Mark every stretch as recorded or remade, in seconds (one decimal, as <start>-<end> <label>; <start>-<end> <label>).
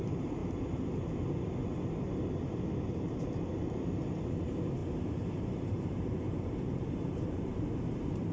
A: 0.0-0.4 remade; 0.4-2.9 recorded; 2.9-8.3 remade